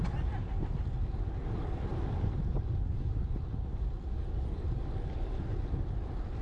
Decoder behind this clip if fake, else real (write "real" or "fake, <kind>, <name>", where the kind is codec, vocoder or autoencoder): real